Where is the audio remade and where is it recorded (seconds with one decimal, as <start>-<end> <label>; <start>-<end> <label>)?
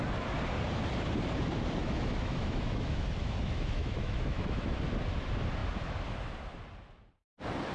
0.0-1.8 recorded; 1.8-4.8 remade; 4.8-7.7 recorded